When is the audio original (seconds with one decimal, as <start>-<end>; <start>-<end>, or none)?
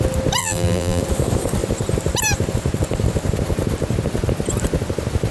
0.0-0.4; 1.0-5.3